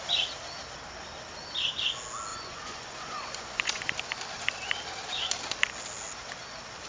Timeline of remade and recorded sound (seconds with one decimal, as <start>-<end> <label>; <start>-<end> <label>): 0.0-2.3 recorded; 2.3-3.8 remade; 3.8-6.9 recorded